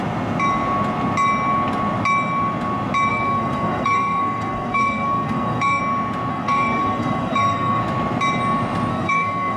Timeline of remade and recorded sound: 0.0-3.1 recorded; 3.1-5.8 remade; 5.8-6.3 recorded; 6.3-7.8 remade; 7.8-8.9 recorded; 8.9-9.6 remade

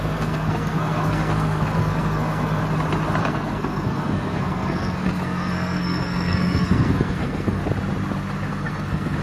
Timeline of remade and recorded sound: 0.0-2.6 remade; 2.6-3.2 recorded; 3.2-7.6 remade; 7.6-8.5 recorded; 8.5-9.2 remade

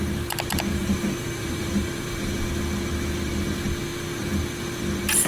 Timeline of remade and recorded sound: 0.0-0.7 recorded; 0.7-2.4 remade; 2.4-5.3 recorded

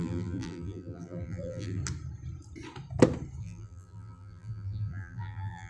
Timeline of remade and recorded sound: 0.0-1.8 remade; 1.8-3.4 recorded; 3.4-5.7 remade

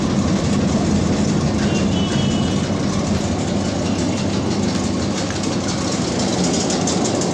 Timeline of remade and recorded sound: 0.0-7.3 recorded

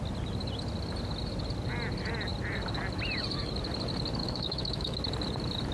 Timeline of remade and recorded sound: 0.0-4.2 recorded; 4.2-5.0 remade; 5.0-5.7 recorded

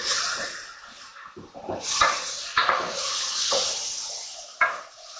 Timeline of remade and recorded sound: 0.0-5.2 recorded

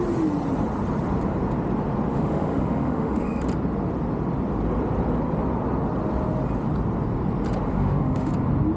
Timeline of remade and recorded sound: 0.0-2.1 recorded; 2.1-3.4 remade; 3.4-7.7 recorded; 7.7-8.3 remade; 8.3-8.8 recorded